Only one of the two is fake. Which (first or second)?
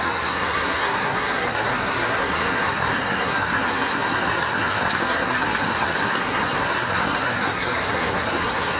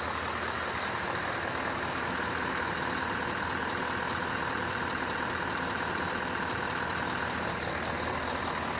first